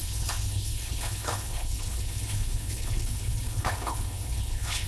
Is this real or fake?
fake